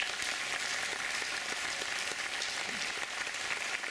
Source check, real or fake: real